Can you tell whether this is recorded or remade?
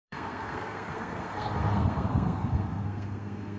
remade